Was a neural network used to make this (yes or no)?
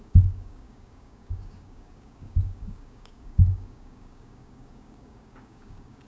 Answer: yes